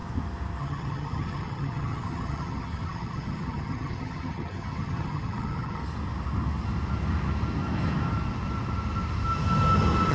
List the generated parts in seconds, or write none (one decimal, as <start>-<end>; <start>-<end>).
0.6-5.8